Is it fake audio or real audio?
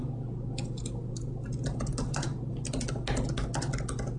real